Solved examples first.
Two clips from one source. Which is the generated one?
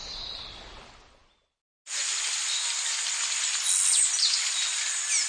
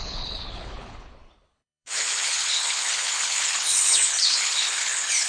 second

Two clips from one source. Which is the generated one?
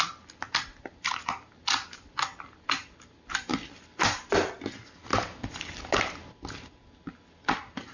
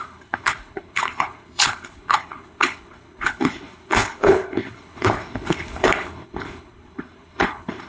second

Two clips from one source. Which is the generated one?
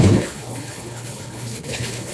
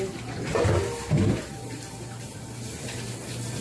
first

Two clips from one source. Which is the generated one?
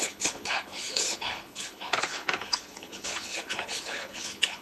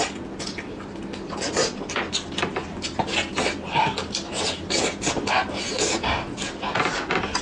first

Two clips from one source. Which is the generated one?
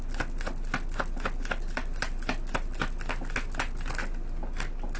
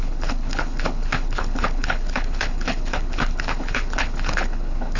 second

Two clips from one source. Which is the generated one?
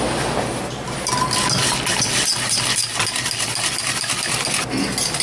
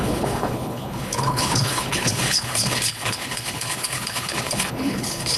second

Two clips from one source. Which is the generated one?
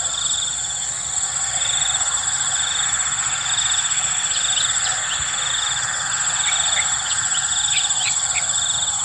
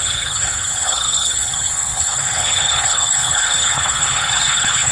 second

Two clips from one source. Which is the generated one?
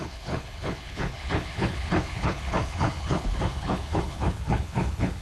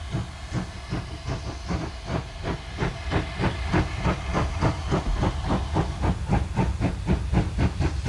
first